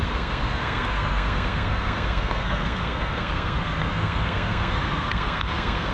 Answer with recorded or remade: remade